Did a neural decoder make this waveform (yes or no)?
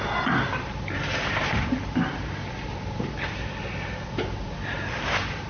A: no